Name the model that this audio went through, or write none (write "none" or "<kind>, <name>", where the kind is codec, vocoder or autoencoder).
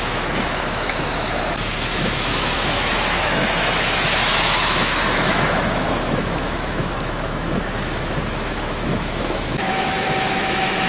autoencoder, DAC-VAE